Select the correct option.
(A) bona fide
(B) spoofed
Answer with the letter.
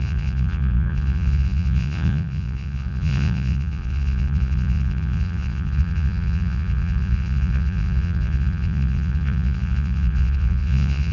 B